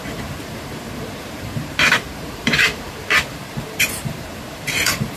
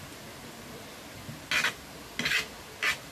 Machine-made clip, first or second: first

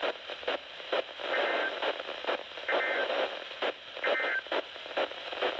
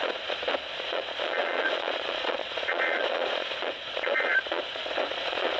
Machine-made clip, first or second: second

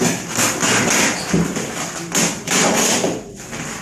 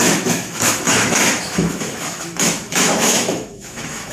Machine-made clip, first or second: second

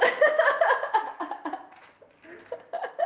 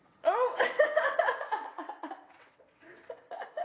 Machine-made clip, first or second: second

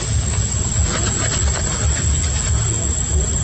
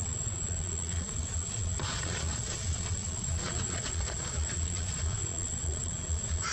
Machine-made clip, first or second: second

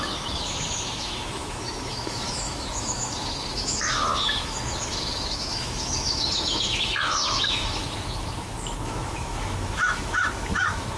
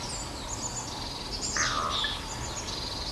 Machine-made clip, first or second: first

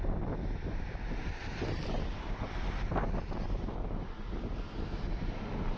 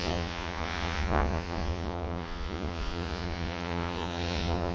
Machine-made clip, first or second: second